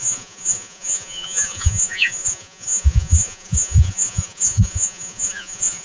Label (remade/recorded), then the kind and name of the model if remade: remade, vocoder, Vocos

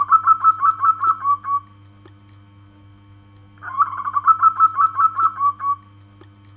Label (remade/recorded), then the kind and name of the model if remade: recorded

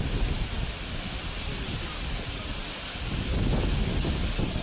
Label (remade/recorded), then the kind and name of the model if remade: recorded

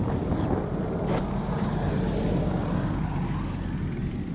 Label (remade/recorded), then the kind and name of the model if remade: recorded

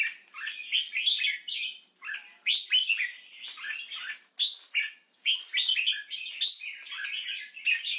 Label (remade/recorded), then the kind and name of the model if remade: recorded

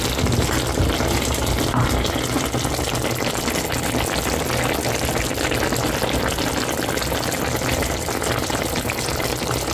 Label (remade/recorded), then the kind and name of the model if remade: recorded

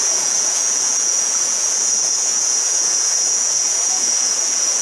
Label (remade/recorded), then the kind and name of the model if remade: remade, vocoder, Vocos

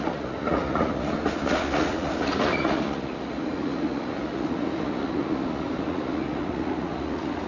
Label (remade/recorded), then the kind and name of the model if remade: remade, vocoder, Vocos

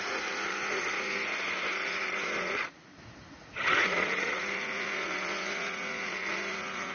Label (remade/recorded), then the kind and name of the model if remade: remade, vocoder, Vocos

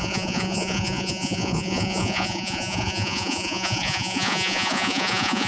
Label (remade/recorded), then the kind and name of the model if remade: remade, vocoder, Vocos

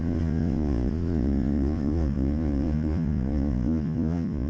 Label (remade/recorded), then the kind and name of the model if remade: remade, vocoder, Vocos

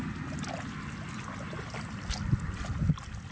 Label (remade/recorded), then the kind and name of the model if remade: recorded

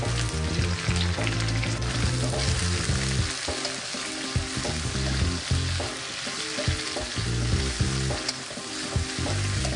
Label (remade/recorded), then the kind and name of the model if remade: recorded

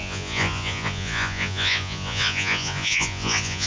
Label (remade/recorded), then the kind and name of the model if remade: remade, vocoder, Vocos